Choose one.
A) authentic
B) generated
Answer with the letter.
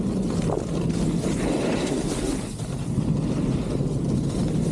A